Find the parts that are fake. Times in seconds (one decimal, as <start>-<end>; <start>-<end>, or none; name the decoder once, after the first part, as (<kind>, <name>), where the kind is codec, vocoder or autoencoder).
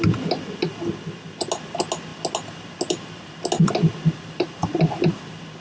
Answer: none